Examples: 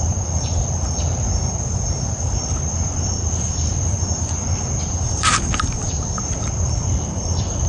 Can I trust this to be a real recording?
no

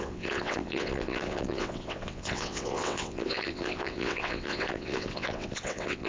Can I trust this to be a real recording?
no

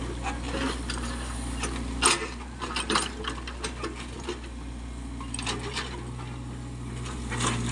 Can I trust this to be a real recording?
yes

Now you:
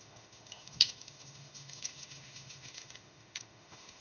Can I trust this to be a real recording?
no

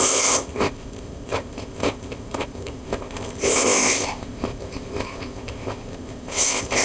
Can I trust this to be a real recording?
no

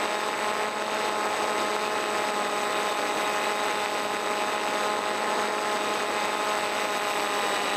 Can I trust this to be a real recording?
yes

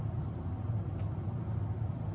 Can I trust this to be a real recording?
yes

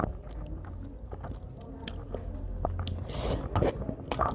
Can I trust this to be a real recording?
yes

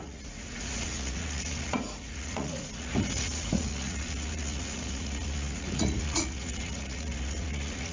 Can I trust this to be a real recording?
no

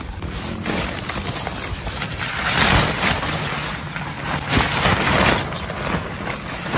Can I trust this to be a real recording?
yes